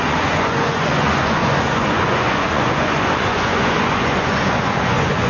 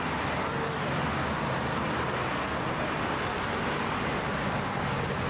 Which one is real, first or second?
second